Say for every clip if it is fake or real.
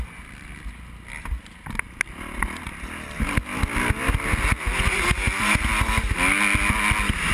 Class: real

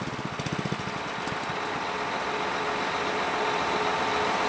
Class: real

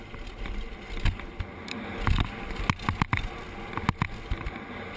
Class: real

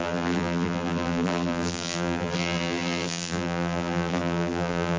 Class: fake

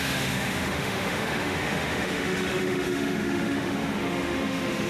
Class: fake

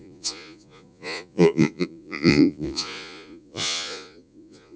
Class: fake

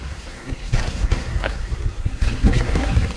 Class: fake